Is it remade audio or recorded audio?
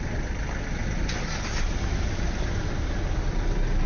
recorded